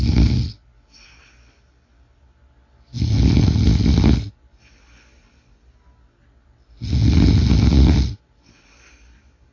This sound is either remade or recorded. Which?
recorded